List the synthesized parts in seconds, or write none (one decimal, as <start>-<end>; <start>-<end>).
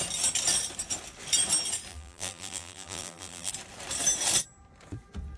1.9-3.5